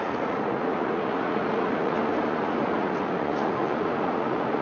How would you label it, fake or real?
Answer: fake